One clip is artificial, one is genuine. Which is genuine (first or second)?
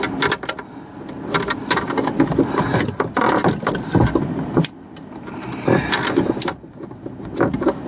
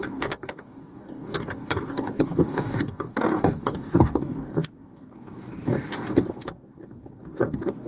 first